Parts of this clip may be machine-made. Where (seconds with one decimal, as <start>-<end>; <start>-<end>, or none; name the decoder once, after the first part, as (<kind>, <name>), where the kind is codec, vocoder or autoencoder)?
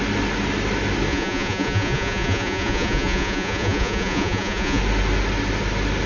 1.1-4.8 (vocoder, Vocos)